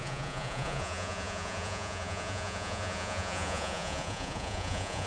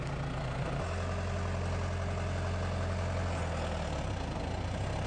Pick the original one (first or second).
second